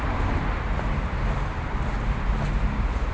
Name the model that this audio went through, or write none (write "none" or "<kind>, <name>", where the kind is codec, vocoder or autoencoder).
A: none